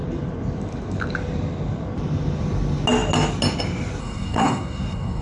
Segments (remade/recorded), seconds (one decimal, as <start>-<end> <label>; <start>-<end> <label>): 0.0-4.0 recorded; 4.0-5.2 remade